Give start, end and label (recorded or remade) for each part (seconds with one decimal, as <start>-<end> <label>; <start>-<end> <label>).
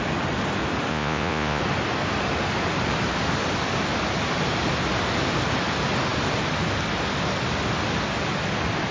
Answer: 0.0-0.9 recorded; 0.9-1.6 remade; 1.6-8.9 recorded